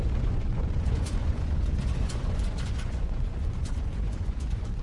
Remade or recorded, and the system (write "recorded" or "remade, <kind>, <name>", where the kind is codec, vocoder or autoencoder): remade, vocoder, Vocos